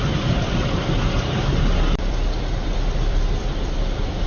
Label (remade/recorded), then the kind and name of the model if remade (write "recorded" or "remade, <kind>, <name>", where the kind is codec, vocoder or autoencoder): remade, vocoder, BigVGAN v2